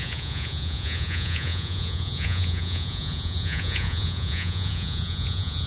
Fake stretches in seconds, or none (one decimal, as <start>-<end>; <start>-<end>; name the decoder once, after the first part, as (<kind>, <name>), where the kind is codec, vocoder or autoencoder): 0.0-5.7 (vocoder, Vocos)